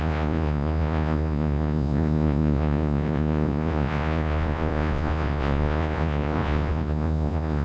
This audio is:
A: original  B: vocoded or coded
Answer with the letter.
B